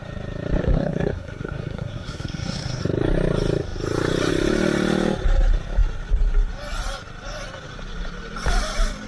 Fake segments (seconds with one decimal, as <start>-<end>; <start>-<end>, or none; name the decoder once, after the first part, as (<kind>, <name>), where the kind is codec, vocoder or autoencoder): 0.6-2.8 (codec, SNAC)